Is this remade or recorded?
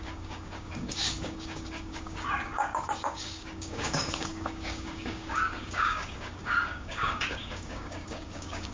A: remade